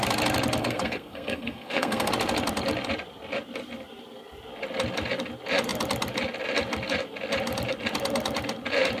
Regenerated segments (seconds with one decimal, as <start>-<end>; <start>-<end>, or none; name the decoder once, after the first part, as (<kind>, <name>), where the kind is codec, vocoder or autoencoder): 0.6-2.1 (codec, SNAC)